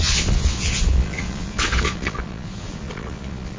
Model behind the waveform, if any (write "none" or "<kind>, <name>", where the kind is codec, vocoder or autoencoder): vocoder, Vocos